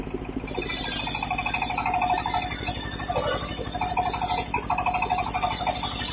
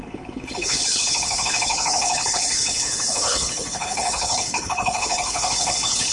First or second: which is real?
first